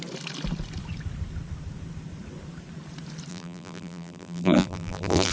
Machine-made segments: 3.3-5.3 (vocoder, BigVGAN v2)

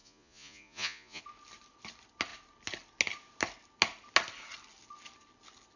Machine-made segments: 0.0-1.2 (vocoder, Vocos)

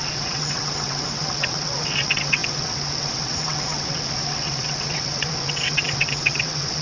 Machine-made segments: 0.0-6.8 (vocoder, WaveNeXt)

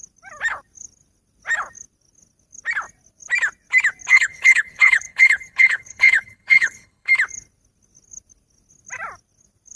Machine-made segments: 4.1-7.1 (codec, HILCodec)

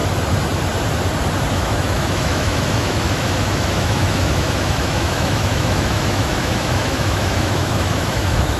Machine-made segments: 1.5-8.6 (autoencoder, DAC-VAE)

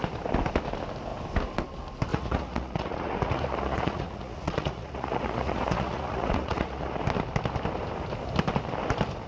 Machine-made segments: 2.1-7.0 (vocoder, Vocos)

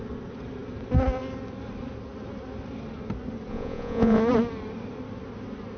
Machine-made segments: 3.5-4.2 (vocoder, Vocos)